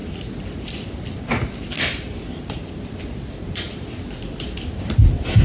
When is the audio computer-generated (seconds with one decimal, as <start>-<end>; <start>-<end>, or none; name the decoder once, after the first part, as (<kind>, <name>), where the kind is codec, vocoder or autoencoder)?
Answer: none